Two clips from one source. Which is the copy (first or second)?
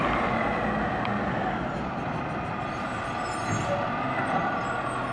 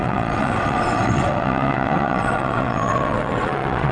second